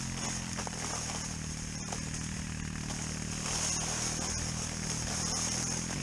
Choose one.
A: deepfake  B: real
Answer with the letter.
B